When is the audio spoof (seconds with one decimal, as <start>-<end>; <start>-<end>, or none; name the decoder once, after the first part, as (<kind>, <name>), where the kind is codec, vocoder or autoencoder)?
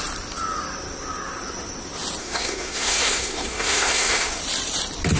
2.2-4.4 (codec, SNAC)